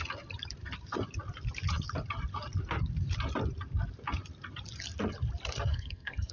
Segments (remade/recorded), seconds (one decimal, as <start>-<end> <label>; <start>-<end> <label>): 0.0-5.7 recorded; 5.7-6.3 remade